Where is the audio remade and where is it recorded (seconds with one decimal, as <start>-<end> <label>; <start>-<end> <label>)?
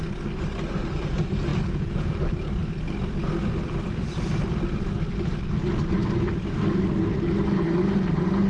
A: 0.0-1.5 recorded; 1.5-2.2 remade; 2.2-8.5 recorded